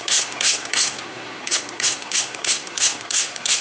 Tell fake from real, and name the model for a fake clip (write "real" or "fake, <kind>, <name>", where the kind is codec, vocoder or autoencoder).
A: fake, codec, SNAC